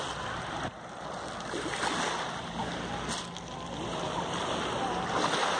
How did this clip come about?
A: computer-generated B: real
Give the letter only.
B